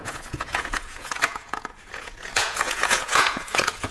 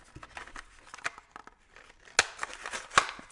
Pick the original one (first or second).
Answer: second